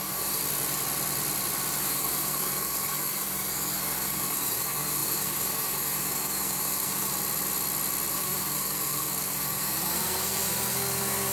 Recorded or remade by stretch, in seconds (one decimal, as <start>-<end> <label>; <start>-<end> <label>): 0.0-0.4 remade; 0.4-1.8 recorded; 1.8-7.1 remade; 7.1-8.1 recorded; 8.1-11.3 remade